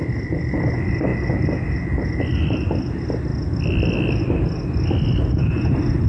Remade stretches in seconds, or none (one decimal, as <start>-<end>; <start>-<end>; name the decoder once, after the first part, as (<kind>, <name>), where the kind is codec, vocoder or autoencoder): none